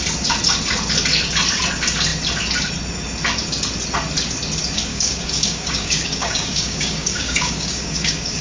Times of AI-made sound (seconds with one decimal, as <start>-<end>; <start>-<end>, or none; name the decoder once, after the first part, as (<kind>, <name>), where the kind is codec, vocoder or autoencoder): 4.9-8.4 (codec, DAC)

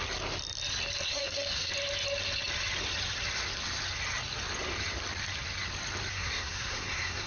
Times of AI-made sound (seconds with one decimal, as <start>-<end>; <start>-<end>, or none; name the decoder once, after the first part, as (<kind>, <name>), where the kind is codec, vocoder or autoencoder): 1.0-1.7 (codec, SNAC); 6.1-7.3

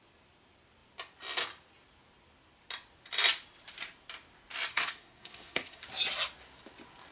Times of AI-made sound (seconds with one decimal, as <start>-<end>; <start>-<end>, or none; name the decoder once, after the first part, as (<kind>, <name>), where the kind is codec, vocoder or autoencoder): 4.7-5.8 (codec, SNAC)

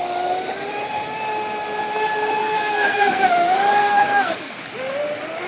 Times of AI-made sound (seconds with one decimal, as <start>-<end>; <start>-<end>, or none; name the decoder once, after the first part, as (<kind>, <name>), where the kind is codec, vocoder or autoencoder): 2.4-3.3 (codec, SNAC); 3.8-4.6

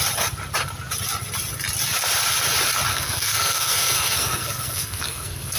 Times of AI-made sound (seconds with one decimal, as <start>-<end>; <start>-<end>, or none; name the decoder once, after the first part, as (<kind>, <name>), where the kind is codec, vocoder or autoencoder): 2.9-5.6 (codec, SNAC)

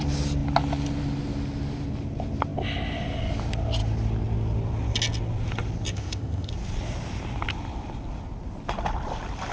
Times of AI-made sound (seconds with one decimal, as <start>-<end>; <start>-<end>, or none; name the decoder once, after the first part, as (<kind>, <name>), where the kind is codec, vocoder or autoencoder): 5.9-6.5 (codec, ZipCodec)